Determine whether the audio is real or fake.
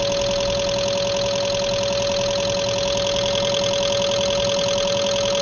real